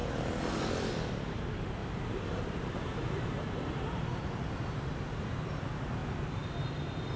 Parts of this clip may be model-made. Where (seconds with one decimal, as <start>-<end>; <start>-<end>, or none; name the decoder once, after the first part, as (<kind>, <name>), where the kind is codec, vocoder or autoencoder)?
0.0-0.7 (vocoder, BigVGAN v2); 1.8-4.5